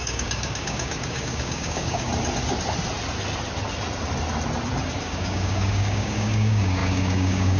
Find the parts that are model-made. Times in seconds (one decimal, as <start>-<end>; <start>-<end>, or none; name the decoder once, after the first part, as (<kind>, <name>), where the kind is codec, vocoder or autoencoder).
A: 0.0-2.1 (codec, DAC); 5.0-7.6